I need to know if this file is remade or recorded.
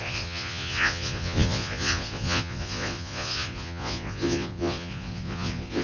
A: remade